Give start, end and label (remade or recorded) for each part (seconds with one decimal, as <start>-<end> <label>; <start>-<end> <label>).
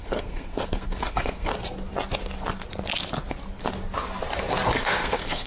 0.0-1.5 remade; 1.5-4.8 recorded; 4.8-5.5 remade